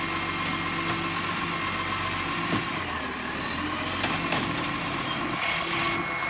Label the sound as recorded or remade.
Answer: recorded